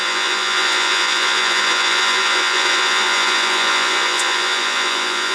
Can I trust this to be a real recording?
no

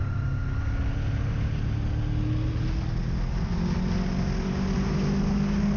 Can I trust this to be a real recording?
yes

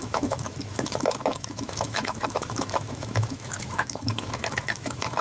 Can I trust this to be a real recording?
no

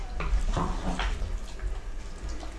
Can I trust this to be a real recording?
yes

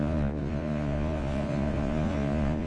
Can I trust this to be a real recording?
no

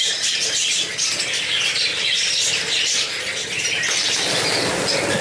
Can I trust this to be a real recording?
yes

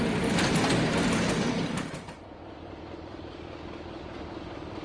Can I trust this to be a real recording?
yes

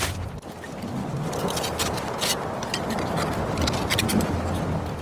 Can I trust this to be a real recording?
yes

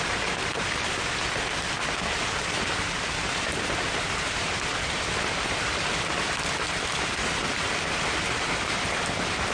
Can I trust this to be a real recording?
no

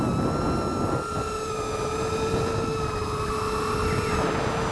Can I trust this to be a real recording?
yes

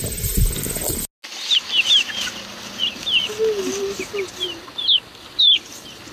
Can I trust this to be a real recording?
yes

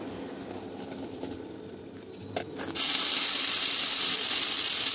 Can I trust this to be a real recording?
yes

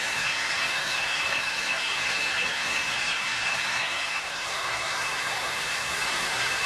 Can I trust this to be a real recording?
no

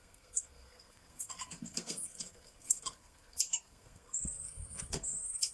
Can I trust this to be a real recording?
no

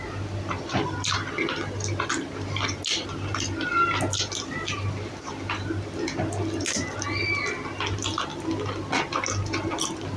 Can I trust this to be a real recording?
yes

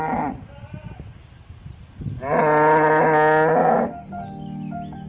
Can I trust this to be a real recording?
yes